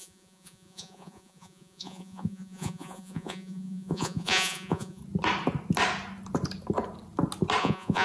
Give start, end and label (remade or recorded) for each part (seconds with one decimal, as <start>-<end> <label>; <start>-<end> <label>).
0.0-5.0 remade; 5.0-7.6 recorded; 7.6-8.0 remade